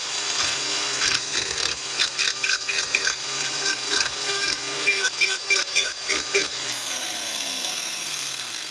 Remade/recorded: remade